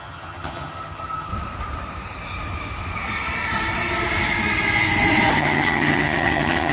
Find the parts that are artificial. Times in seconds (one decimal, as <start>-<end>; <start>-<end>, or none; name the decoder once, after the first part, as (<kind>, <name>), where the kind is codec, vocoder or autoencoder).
0.0-1.3 (vocoder, HiFi-GAN); 5.3-6.7